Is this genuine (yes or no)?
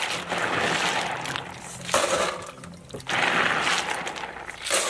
yes